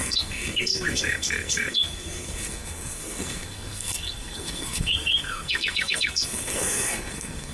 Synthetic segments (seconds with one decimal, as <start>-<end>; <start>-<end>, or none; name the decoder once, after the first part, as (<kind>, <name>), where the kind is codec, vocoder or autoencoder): 0.0-7.5 (codec, SNAC)